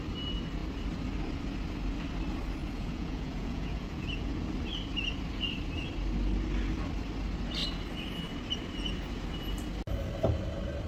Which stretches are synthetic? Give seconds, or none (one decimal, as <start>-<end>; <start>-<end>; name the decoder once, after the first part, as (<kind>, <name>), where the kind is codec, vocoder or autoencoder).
2.6-4.3 (vocoder, Vocos)